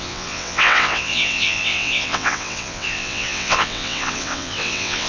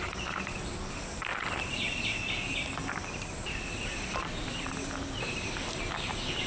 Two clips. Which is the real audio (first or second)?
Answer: second